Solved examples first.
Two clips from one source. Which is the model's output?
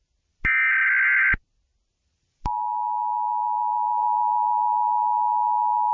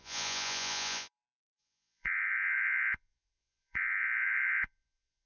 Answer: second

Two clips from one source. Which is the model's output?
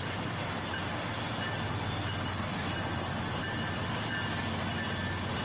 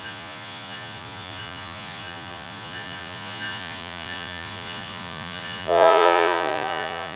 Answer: second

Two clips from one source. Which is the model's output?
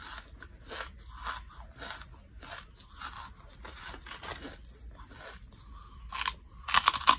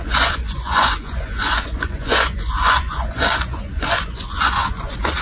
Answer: second